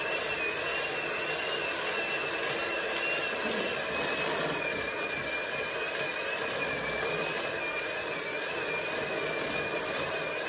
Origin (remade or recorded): recorded